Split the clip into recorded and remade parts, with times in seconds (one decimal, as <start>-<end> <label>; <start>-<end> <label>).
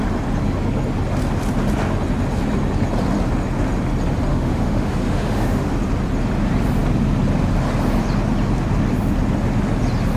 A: 0.0-4.3 recorded; 4.3-5.7 remade; 5.7-10.2 recorded